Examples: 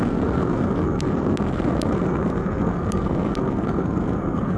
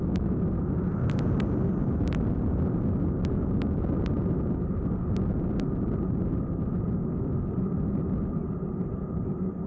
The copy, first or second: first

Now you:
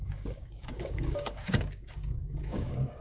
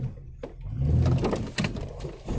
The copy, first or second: first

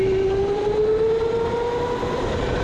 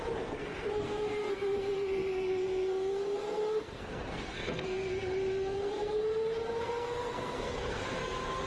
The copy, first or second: second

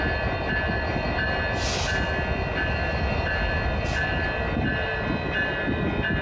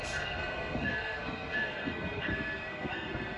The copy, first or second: second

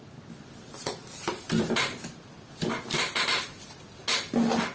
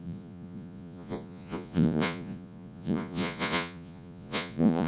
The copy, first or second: second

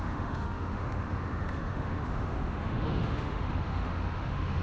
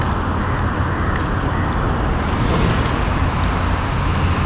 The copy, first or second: first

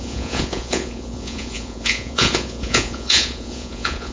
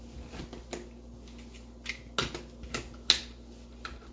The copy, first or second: first